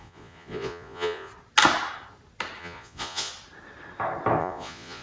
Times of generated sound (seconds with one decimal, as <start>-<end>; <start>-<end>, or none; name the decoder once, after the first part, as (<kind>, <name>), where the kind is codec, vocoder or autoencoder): 0.0-1.3 (vocoder, Vocos); 2.6-3.3; 4.4-5.0